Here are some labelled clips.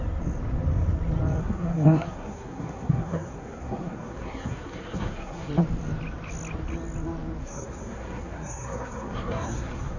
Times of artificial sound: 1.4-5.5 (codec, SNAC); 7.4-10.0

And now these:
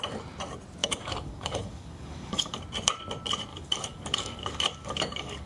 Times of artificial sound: 0.8-2.6 (codec, DAC); 3.5-5.5